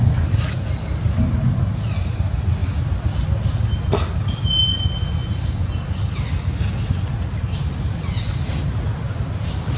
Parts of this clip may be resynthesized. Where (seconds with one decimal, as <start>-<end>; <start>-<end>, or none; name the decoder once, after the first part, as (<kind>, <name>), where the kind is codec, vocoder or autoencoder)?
none